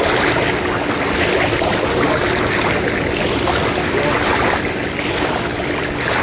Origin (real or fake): real